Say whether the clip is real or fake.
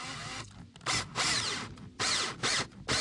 fake